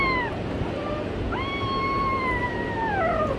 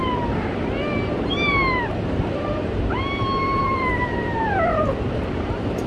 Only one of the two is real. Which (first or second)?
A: first